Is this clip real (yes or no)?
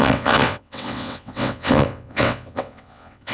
no